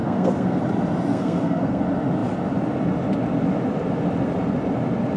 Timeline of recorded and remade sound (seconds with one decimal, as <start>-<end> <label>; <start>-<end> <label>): 0.0-0.6 remade; 0.6-1.1 recorded; 1.1-1.8 remade; 1.8-5.2 recorded